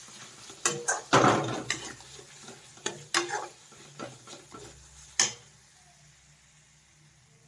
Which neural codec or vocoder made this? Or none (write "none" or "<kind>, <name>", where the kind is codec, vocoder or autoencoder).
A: none